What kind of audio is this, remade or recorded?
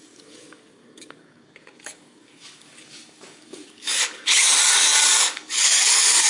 remade